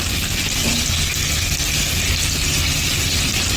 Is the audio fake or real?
real